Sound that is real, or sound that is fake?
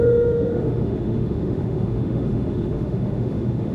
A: fake